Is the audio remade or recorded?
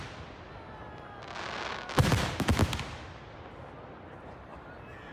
recorded